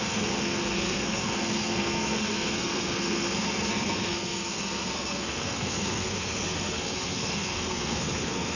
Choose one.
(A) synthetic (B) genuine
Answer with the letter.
A